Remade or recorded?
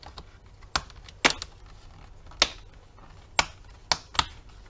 recorded